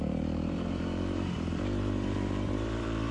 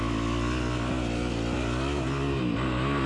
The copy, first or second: first